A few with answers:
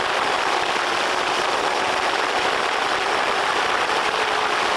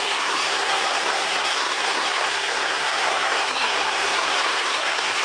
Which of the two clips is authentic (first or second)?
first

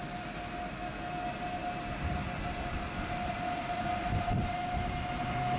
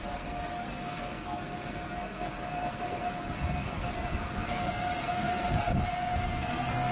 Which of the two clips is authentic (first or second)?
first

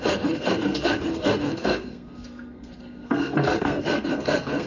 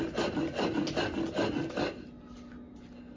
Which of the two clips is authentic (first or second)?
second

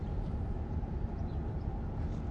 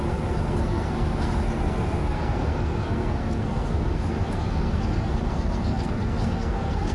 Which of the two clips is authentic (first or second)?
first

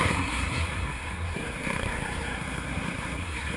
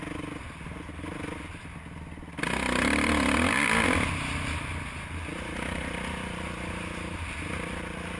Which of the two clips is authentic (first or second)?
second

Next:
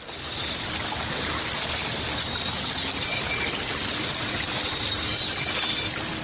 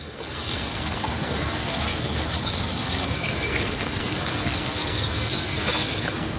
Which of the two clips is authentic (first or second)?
first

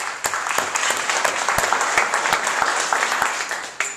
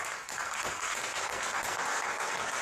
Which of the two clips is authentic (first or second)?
first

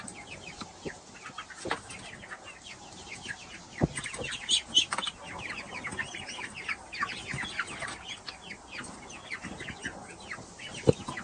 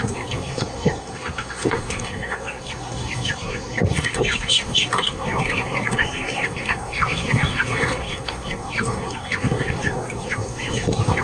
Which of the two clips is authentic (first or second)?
first